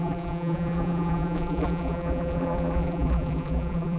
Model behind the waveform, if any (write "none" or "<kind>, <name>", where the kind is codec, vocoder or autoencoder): vocoder, BigVGAN v2